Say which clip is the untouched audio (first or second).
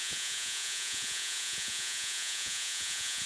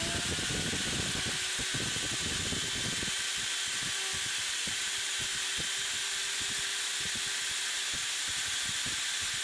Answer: second